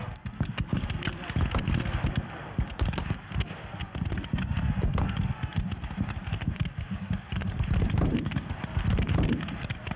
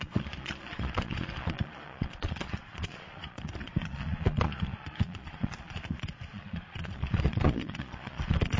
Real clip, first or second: first